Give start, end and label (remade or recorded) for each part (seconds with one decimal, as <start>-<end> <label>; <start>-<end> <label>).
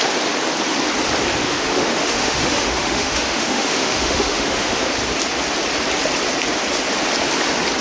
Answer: 0.0-1.4 recorded; 1.4-4.9 remade; 4.9-7.8 recorded